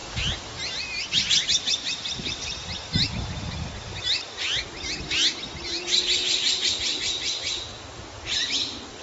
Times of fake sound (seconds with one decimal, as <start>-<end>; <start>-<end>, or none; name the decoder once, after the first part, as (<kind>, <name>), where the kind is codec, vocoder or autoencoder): none